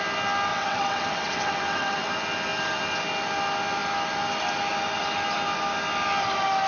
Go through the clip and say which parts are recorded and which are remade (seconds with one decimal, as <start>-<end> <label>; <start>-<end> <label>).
0.0-0.5 recorded; 0.5-2.1 remade; 2.1-6.7 recorded